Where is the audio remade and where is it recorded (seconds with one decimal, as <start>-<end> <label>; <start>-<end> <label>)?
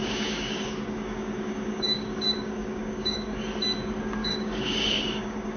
0.0-3.4 remade; 3.4-4.2 recorded; 4.2-5.6 remade